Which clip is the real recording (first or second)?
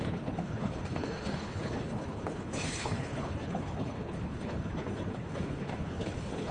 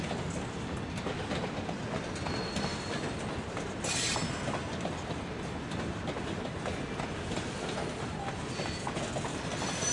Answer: second